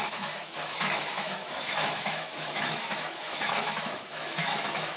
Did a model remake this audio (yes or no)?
yes